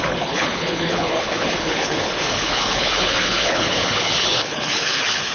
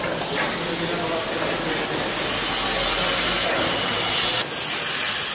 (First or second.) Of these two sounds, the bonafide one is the second